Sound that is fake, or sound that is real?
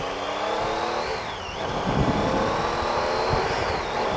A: real